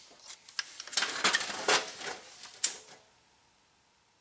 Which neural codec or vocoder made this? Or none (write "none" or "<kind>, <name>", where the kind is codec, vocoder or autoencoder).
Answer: none